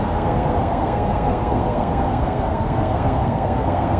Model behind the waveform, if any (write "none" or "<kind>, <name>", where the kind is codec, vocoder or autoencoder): codec, SNAC